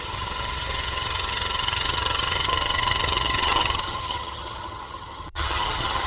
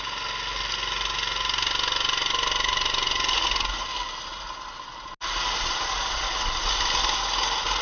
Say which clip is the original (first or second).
second